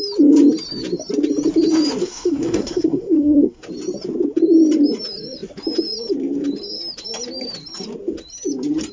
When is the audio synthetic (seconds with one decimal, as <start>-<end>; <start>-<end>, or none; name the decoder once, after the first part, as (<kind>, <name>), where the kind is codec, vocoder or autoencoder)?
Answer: 2.0-3.6 (codec, SNAC)